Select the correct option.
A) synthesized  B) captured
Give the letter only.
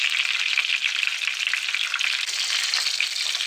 B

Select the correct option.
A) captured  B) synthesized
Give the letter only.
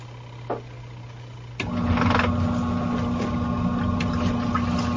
A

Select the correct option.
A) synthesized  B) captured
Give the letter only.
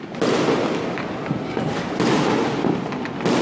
B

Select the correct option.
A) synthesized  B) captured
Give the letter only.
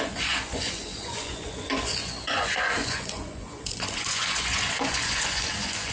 A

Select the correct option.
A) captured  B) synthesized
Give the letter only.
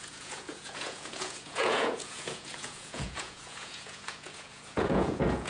B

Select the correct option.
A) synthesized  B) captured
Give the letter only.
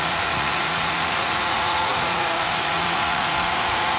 A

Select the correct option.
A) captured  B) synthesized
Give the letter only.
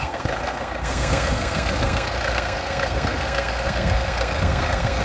B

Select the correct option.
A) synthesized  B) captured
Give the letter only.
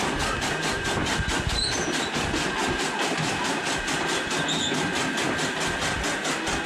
B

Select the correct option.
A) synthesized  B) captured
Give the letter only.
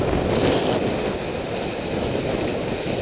B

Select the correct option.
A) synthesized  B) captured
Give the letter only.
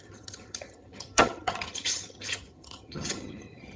A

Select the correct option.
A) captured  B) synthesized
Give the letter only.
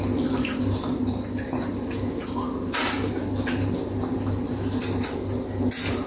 A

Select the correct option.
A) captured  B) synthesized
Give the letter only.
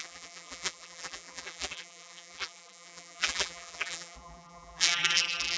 B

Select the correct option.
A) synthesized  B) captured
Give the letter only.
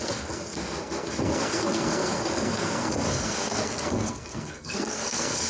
A